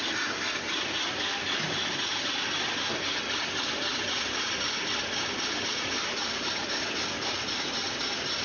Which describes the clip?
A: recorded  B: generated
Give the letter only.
A